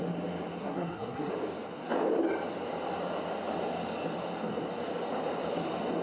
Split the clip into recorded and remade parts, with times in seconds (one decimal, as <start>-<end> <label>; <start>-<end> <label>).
0.0-0.6 recorded; 0.6-1.3 remade; 1.3-6.0 recorded